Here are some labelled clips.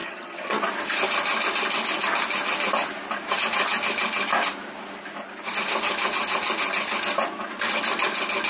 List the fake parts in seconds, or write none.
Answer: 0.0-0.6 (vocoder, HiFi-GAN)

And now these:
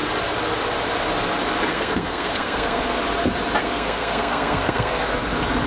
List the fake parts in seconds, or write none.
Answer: 1.7-3.0 (codec, SNAC); 3.6-5.1

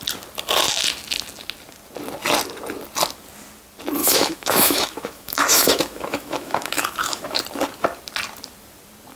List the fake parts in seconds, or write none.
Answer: 4.0-7.4 (autoencoder, DAC-VAE)

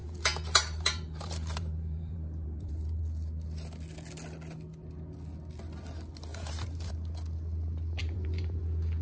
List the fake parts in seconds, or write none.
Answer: 0.0-3.0 (vocoder, BigVGAN v2); 6.3-6.9; 8.0-8.6

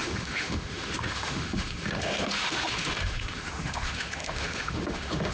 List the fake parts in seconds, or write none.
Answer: 0.0-5.3 (autoencoder, DAC-VAE)